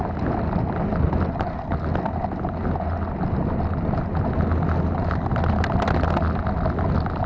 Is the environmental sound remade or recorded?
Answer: recorded